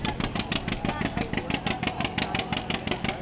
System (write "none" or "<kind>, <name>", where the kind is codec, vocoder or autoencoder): none